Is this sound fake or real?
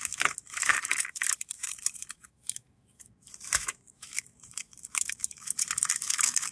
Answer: fake